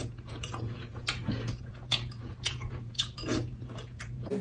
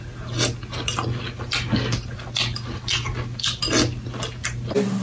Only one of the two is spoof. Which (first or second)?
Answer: first